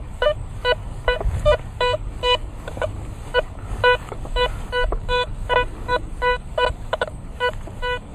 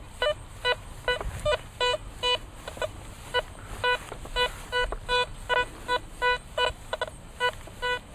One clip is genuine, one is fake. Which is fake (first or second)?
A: first